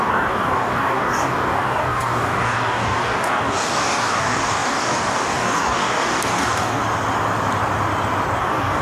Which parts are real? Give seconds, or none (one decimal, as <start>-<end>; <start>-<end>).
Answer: 6.8-8.4